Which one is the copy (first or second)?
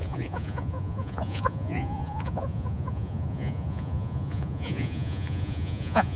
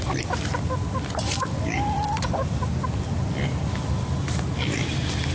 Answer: first